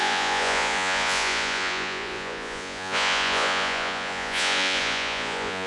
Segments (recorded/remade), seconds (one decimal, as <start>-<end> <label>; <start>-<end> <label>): 0.0-5.7 remade